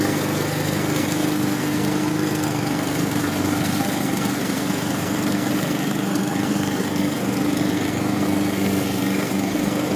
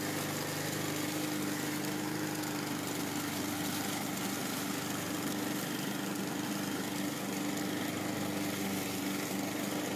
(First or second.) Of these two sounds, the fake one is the first